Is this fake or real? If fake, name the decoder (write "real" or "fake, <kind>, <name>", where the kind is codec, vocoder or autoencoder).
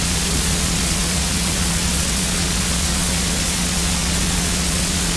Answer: fake, vocoder, Vocos